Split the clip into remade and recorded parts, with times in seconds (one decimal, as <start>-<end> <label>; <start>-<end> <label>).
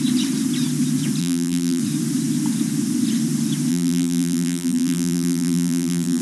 0.0-1.2 recorded; 1.2-1.8 remade; 1.8-3.7 recorded; 3.7-6.2 remade